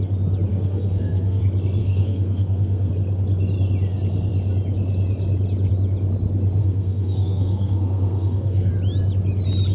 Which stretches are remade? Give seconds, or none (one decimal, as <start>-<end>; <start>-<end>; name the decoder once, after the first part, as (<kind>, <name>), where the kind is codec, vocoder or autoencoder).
0.5-1.4 (codec, SNAC); 1.8-2.9; 6.6-8.7